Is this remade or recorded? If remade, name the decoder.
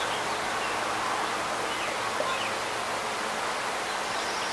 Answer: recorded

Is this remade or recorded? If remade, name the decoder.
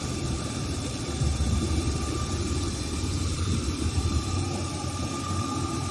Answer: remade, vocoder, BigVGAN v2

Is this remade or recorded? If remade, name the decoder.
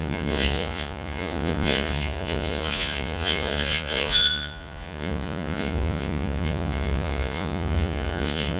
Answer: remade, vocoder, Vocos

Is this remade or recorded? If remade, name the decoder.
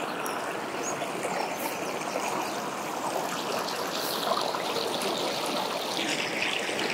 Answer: recorded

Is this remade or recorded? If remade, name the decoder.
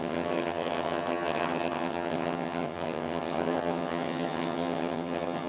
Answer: remade, vocoder, HiFi-GAN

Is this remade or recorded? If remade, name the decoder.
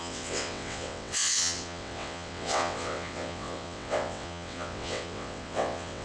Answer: remade, vocoder, WaveNeXt